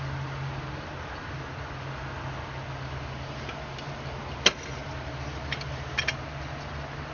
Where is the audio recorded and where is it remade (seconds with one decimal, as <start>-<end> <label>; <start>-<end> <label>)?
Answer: 0.0-4.8 recorded; 4.8-6.0 remade; 6.0-7.1 recorded